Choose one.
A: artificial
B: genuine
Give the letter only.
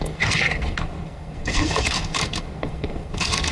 A